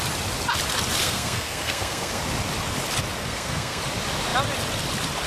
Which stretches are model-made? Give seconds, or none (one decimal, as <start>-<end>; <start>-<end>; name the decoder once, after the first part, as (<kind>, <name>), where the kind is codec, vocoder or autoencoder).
1.0-2.2 (codec, SNAC); 3.2-3.8